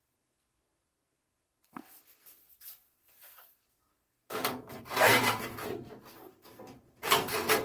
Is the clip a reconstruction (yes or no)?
yes